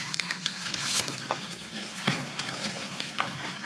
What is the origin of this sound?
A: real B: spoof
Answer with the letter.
B